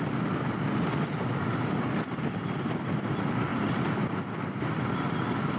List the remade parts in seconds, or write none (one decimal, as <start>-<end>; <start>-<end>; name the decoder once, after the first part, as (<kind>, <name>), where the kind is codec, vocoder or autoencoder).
none